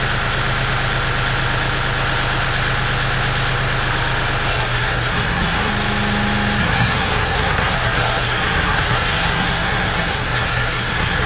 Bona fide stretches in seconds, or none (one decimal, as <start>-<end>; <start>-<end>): 0.0-4.5; 5.7-6.6